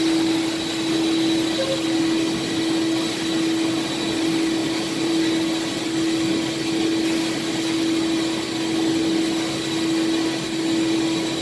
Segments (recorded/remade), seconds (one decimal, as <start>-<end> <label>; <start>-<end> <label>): 0.0-4.6 recorded; 4.6-5.2 remade; 5.2-11.4 recorded

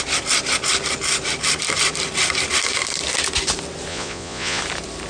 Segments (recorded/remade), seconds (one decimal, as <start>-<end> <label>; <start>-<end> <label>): 0.0-3.9 recorded; 3.9-4.6 remade; 4.6-5.1 recorded